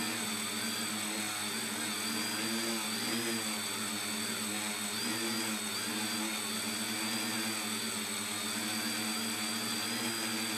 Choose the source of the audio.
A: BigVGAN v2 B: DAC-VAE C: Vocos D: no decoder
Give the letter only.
D